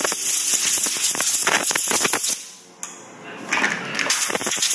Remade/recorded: recorded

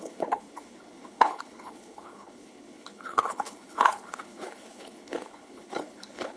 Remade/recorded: remade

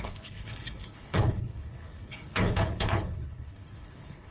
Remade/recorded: remade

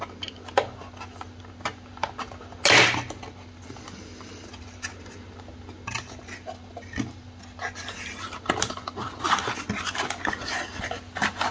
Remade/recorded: recorded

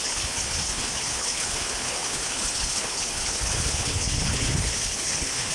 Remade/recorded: remade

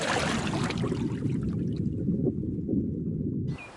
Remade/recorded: recorded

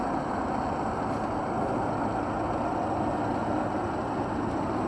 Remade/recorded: recorded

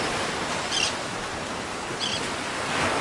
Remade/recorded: recorded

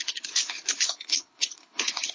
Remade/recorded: remade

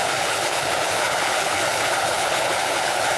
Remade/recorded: remade